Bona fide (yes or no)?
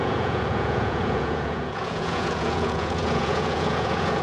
no